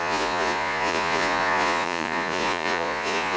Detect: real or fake fake